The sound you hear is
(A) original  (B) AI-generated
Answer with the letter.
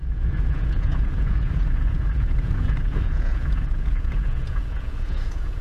B